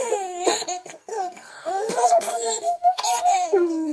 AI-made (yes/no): yes